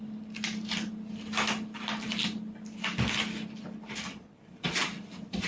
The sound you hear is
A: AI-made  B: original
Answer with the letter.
B